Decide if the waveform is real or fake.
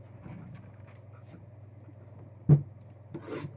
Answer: real